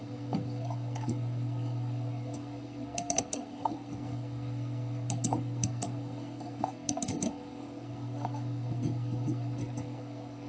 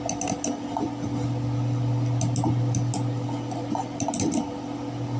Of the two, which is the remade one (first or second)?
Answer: first